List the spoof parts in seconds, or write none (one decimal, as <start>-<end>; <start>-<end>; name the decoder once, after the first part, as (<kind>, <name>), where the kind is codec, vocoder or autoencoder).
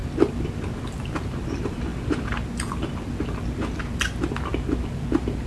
none